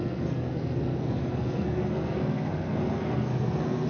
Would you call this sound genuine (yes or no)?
no